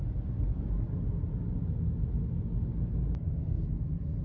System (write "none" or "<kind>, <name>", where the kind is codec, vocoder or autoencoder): none